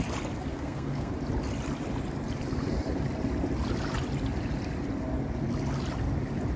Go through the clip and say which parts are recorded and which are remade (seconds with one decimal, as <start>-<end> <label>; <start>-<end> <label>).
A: 0.0-0.5 recorded; 0.5-1.1 remade; 1.1-6.6 recorded

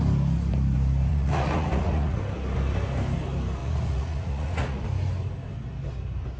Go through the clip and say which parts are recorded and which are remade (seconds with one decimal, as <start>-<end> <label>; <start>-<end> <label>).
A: 0.0-1.1 recorded; 1.1-2.2 remade; 2.2-3.6 recorded; 3.6-4.8 remade; 4.8-6.4 recorded

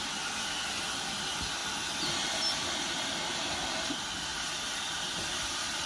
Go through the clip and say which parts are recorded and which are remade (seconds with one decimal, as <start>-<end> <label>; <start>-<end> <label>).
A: 0.0-5.9 recorded